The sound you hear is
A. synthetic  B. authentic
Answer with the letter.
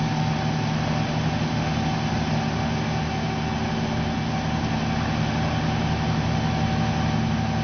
B